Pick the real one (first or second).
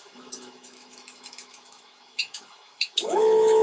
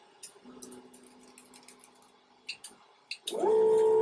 second